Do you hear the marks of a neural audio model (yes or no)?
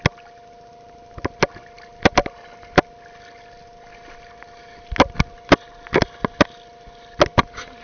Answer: no